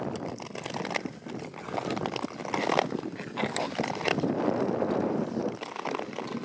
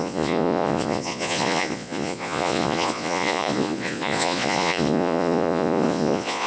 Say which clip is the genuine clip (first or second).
first